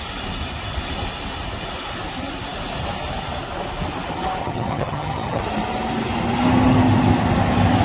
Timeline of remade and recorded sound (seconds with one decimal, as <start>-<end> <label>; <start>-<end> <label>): 0.0-4.4 recorded; 4.4-5.4 remade; 5.4-7.8 recorded